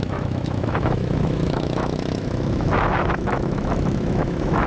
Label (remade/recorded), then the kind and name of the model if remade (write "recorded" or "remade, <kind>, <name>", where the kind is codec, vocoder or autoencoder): remade, autoencoder, DAC-VAE